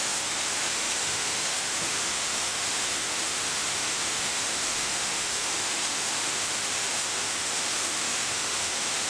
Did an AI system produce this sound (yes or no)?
yes